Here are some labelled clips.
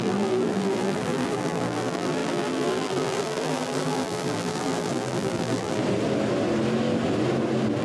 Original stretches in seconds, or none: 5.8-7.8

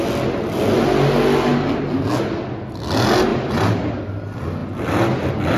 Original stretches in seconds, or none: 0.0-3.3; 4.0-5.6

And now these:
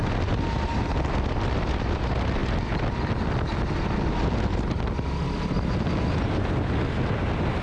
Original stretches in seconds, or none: 0.0-7.6